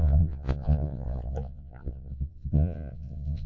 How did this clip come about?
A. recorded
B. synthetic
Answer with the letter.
B